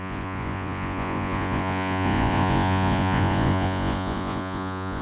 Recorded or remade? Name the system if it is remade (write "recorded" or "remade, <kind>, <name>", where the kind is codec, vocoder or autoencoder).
remade, vocoder, Vocos